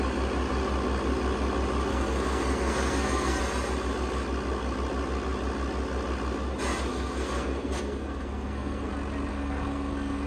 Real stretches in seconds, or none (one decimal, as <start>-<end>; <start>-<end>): 0.0-1.9; 3.4-6.9; 8.9-9.3